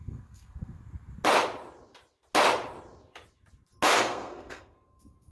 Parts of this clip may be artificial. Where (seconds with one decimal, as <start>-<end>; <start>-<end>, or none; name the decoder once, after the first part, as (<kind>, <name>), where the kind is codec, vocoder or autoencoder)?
0.0-0.8 (codec, SNAC); 4.0-5.3